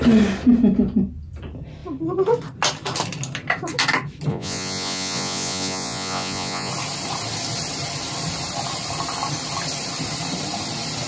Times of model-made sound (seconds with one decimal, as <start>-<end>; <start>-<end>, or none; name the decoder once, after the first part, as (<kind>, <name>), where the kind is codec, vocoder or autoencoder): 4.3-6.7 (vocoder, Vocos)